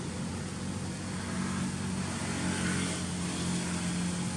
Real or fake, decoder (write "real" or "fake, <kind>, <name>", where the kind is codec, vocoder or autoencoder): real